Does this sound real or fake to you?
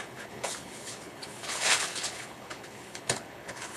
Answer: fake